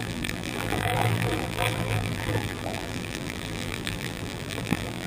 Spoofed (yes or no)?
yes